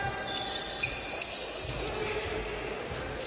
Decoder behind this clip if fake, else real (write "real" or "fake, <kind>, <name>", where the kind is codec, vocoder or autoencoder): real